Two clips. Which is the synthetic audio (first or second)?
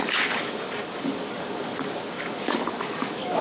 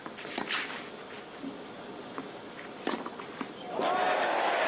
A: first